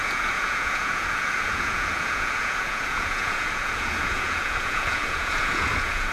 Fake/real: fake